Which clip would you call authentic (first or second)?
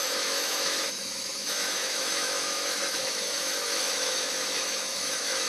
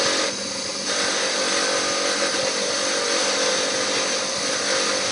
second